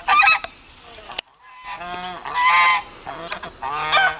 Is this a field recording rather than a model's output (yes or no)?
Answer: yes